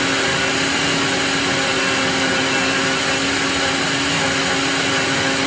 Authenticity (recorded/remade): recorded